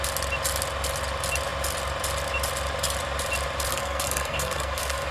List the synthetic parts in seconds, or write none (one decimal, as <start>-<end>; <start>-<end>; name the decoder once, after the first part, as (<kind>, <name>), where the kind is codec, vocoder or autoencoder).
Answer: 3.7-5.1 (codec, SNAC)